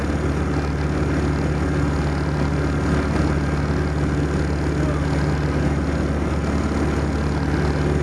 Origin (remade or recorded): recorded